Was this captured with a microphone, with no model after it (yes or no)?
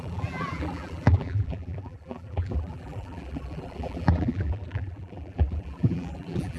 no